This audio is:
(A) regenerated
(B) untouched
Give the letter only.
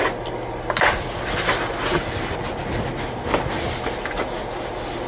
B